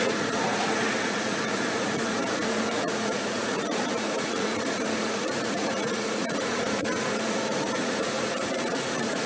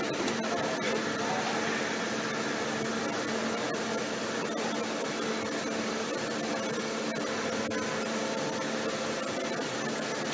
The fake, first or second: first